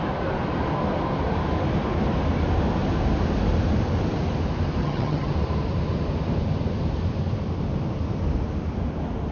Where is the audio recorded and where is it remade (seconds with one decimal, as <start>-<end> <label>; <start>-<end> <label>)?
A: 0.0-4.8 recorded; 4.8-5.3 remade; 5.3-9.3 recorded